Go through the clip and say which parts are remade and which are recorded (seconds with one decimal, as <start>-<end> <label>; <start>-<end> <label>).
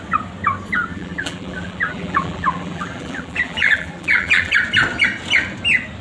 0.0-0.9 recorded; 0.9-4.5 remade; 4.5-6.0 recorded